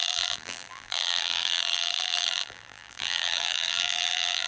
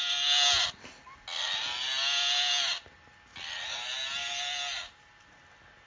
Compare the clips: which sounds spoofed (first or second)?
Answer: first